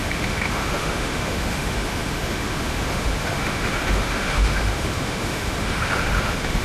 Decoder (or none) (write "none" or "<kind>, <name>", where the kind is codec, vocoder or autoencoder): autoencoder, DAC-VAE